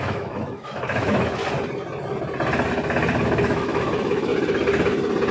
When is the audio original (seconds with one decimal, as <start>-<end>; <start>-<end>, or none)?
1.4-3.2; 4.3-5.3